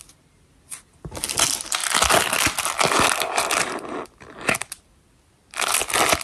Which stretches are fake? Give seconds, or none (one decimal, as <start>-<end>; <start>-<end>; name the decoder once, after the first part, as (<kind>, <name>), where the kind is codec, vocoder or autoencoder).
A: none